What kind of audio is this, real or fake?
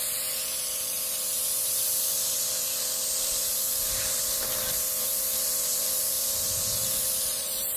fake